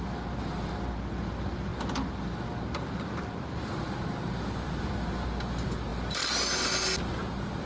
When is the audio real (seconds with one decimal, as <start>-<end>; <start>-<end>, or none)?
0.0-7.7